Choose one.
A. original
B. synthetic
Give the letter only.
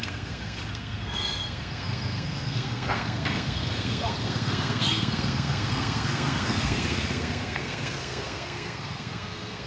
B